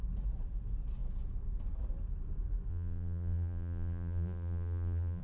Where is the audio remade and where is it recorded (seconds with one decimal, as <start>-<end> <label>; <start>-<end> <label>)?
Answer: 0.0-2.7 recorded; 2.7-5.2 remade